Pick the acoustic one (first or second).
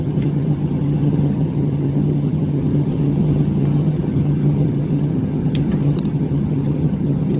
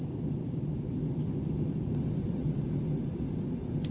second